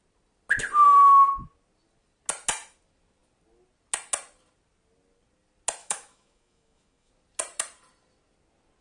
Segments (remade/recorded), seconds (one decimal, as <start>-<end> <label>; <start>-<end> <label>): 0.0-5.8 recorded; 5.8-7.1 remade; 7.1-8.8 recorded